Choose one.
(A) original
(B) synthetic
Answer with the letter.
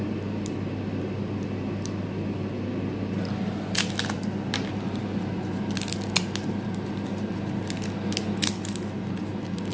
A